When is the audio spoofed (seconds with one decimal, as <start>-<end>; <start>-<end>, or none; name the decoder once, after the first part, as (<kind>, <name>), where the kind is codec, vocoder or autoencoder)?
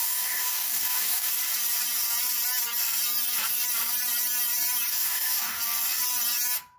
0.0-1.3 (codec, DAC); 4.9-5.6